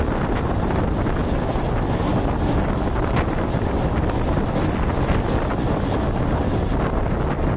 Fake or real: real